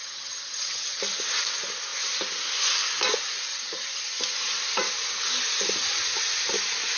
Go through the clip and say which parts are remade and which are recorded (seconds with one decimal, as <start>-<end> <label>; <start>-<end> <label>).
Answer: 0.0-1.0 remade; 1.0-3.5 recorded; 3.5-4.0 remade; 4.0-7.0 recorded